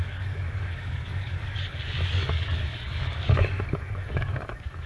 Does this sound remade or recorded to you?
remade